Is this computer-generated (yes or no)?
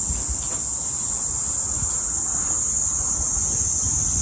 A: no